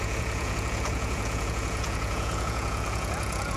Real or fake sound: fake